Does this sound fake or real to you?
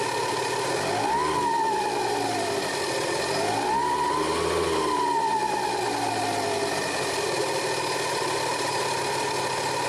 real